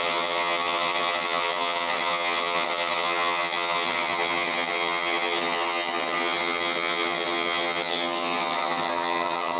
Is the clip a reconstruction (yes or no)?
yes